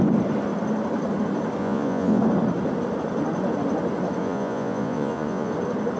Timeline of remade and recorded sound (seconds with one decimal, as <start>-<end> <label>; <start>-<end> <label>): 0.0-1.6 recorded; 1.6-2.2 remade; 2.2-4.2 recorded; 4.2-5.5 remade; 5.5-6.0 recorded